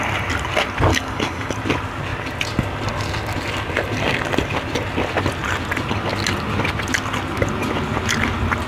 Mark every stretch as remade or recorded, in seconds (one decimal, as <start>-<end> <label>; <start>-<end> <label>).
0.0-0.9 recorded; 0.9-1.5 remade; 1.5-8.7 recorded